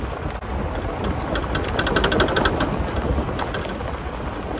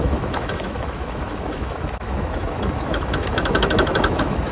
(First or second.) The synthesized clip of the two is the second